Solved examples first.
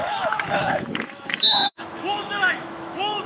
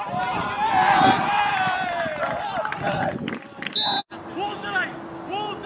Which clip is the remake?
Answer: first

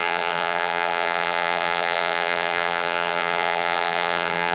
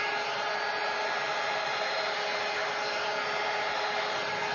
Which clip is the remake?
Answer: first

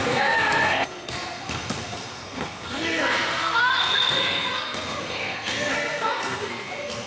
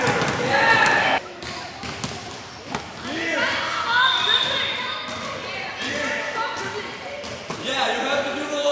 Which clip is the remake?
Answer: first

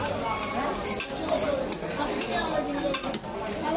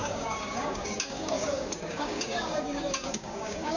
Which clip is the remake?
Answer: second